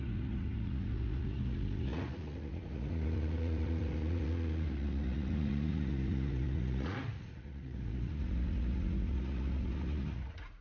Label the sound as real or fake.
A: fake